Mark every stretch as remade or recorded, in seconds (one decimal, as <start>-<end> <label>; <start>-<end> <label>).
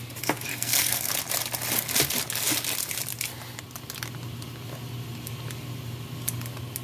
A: 0.0-0.5 recorded; 0.5-1.1 remade; 1.1-6.8 recorded